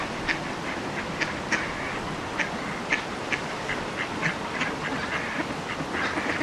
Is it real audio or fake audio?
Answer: real